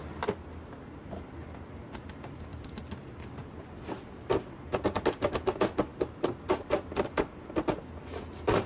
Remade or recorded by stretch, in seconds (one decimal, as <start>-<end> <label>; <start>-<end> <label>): 0.0-2.5 recorded; 2.5-3.2 remade; 3.2-5.9 recorded; 5.9-7.2 remade; 7.2-8.7 recorded